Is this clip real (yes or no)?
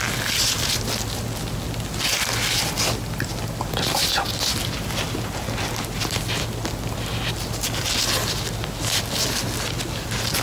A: yes